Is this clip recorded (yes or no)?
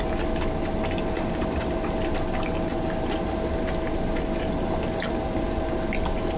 yes